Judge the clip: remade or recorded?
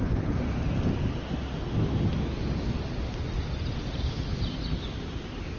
recorded